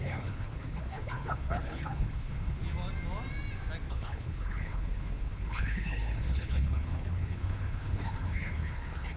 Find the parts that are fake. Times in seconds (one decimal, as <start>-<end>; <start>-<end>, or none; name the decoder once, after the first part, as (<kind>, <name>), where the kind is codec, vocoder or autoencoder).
0.0-2.6 (codec, HILCodec); 3.9-9.2

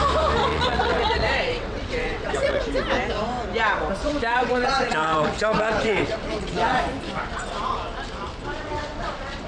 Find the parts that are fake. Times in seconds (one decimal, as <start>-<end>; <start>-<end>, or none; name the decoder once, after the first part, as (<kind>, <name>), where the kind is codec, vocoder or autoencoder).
0.5-2.6 (vocoder, WaveNeXt); 4.0-6.8; 8.5-9.5

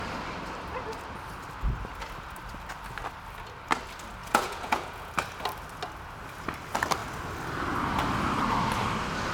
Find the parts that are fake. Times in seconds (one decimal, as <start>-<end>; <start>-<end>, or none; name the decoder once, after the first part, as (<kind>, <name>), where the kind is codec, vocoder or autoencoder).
4.2-5.1 (vocoder, Vocos)

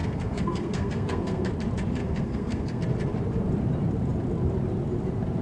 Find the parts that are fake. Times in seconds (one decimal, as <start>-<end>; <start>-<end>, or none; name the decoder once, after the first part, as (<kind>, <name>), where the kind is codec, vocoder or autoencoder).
0.0-1.5 (codec, SNAC); 2.0-2.8

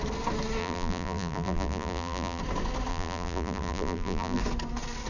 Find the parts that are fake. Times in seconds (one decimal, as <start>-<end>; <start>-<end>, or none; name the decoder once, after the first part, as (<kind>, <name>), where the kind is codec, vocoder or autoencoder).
0.6-2.4 (vocoder, BigVGAN v2); 2.9-4.4